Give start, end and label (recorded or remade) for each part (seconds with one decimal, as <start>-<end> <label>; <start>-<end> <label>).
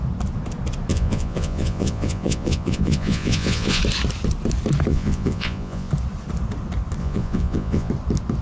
0.0-0.9 recorded; 0.9-3.8 remade; 3.8-4.9 recorded; 4.9-5.9 remade; 5.9-7.0 recorded; 7.0-7.9 remade; 7.9-8.4 recorded